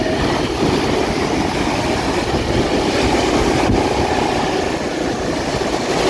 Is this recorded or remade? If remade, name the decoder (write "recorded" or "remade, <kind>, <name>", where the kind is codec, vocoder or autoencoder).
recorded